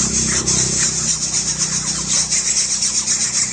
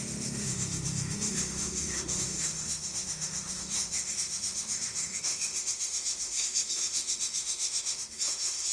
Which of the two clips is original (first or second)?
first